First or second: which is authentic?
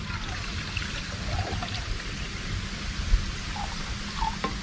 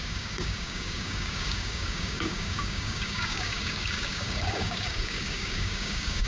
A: first